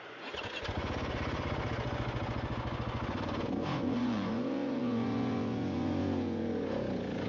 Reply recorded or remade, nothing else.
remade